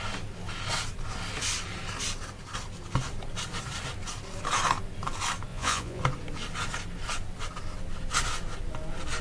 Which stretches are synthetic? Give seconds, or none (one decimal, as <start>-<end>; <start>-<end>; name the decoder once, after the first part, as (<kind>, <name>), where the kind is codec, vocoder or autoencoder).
5.5-6.0 (vocoder, Vocos)